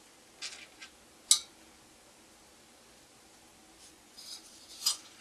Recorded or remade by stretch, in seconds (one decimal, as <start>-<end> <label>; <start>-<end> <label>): 0.0-3.9 recorded; 3.9-5.2 remade